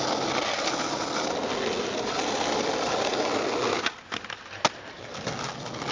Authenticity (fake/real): real